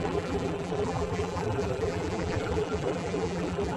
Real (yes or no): no